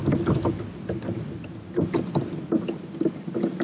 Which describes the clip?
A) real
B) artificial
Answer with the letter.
A